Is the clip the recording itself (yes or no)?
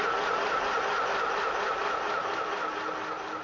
yes